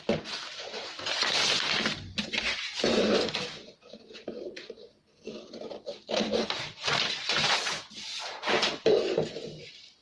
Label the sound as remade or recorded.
recorded